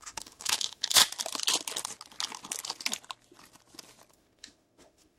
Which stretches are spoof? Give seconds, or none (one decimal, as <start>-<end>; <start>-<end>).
0.0-1.0; 4.1-5.2